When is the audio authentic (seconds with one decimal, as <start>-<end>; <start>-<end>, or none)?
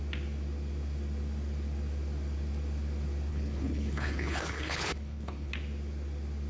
0.0-3.3; 5.5-6.5